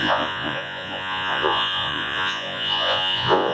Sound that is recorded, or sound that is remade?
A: remade